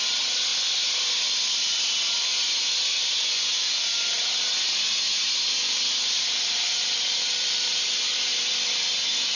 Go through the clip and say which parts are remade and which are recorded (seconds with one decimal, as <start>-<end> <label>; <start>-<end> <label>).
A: 0.0-9.4 recorded